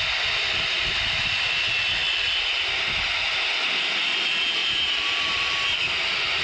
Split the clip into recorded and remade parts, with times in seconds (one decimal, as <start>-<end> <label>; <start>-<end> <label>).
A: 0.0-4.6 recorded; 4.6-5.4 remade; 5.4-6.4 recorded